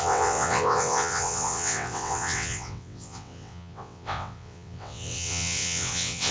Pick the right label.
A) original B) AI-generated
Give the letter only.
B